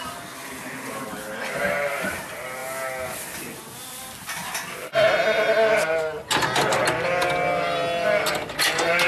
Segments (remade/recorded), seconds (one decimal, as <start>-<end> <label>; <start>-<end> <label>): 0.0-9.1 recorded